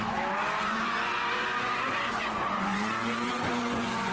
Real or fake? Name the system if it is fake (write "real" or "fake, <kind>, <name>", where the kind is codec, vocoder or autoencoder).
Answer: fake, vocoder, Vocos